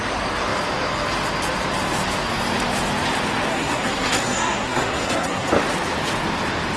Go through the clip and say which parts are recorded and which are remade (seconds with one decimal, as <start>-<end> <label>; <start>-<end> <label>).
0.0-3.5 recorded; 3.5-5.5 remade; 5.5-6.8 recorded